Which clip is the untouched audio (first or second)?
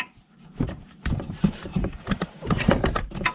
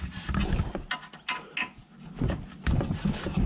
second